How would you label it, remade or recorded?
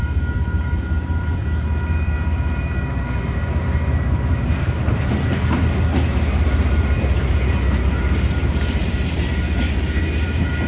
remade